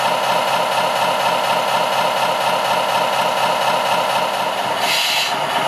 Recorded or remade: recorded